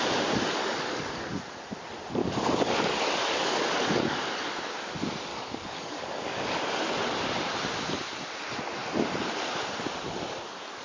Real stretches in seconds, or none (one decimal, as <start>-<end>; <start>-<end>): 0.0-0.6; 1.4-2.2; 4.5-5.3; 6.6-10.8